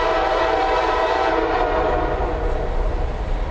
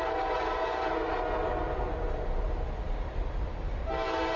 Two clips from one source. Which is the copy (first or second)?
first